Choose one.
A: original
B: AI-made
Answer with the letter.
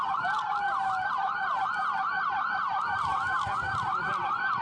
A